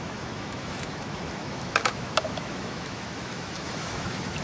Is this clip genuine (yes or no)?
no